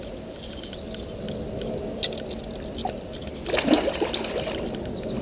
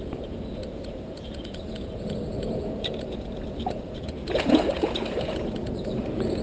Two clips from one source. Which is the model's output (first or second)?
second